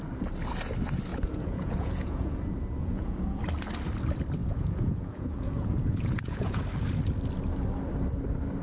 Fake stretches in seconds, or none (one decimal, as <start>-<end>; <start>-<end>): 1.1-2.4; 2.8-3.4; 4.4-6.6